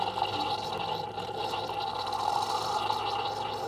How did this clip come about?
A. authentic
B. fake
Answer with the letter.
A